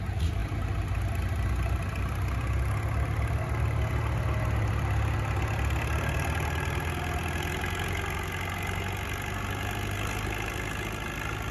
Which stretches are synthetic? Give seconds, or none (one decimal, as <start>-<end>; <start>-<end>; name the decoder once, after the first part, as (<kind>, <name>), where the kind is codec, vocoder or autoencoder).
none

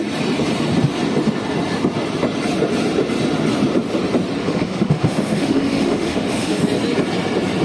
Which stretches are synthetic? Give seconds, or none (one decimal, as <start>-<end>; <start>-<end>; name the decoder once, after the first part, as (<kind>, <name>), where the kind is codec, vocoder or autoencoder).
4.4-6.6 (autoencoder, DAC-VAE)

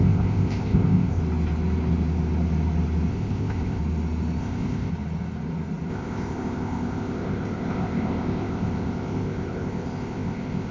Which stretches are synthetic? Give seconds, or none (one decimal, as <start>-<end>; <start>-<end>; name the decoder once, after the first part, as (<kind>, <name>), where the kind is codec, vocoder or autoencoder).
0.0-1.2 (codec, ZipCodec); 3.1-3.8; 4.4-4.9; 5.9-10.7